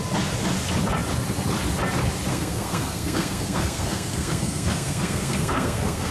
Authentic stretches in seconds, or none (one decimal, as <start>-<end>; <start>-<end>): 0.0-2.3